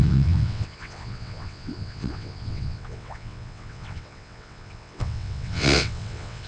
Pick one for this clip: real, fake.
fake